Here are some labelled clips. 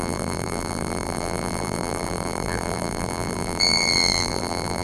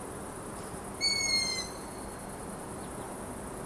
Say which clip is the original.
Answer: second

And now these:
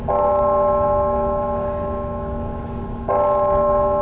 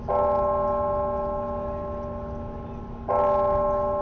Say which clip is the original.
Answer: second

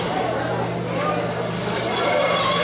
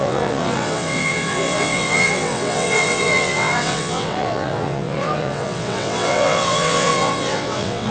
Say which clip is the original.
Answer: first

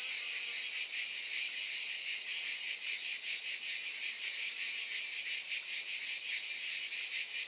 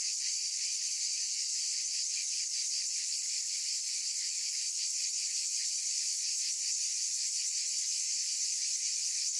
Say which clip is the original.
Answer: first